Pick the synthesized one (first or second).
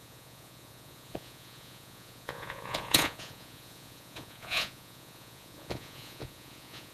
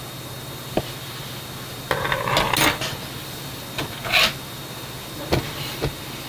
first